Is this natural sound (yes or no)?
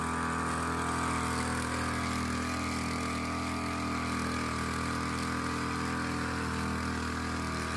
yes